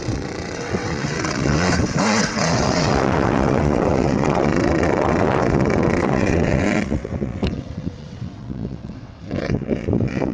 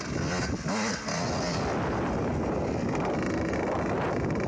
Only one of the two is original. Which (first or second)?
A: second